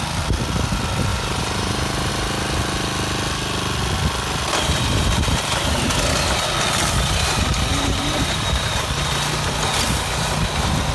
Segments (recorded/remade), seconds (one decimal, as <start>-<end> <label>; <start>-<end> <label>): 0.0-1.1 recorded; 1.1-2.1 remade; 2.1-7.7 recorded; 7.7-8.7 remade; 8.7-10.9 recorded